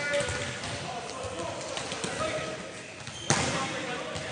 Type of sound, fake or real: real